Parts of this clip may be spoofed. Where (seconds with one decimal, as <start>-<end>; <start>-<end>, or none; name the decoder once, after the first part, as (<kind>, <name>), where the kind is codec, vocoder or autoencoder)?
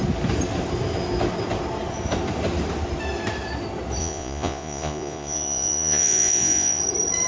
4.0-6.8 (vocoder, Vocos)